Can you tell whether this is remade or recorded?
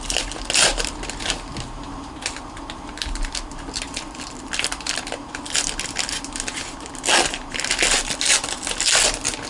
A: recorded